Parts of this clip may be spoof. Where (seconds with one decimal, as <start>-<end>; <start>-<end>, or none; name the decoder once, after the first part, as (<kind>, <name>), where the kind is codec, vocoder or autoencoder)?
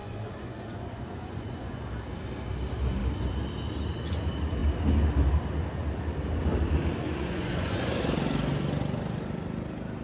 0.0-1.8 (vocoder, Vocos); 7.0-8.0